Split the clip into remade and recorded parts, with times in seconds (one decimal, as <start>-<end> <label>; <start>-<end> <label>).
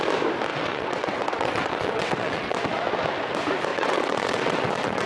0.0-0.5 recorded; 0.5-2.6 remade; 2.6-3.7 recorded; 3.7-5.1 remade